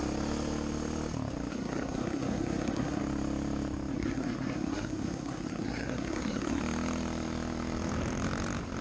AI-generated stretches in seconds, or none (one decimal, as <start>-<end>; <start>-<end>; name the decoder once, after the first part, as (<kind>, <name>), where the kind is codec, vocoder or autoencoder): 1.5-3.0 (codec, SNAC); 3.9-6.6